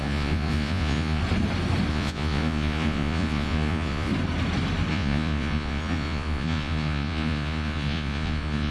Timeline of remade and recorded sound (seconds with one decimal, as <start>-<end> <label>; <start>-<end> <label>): 0.0-1.2 remade; 1.2-1.9 recorded; 1.9-4.1 remade; 4.1-4.9 recorded; 4.9-8.7 remade